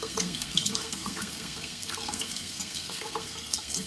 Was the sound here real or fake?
fake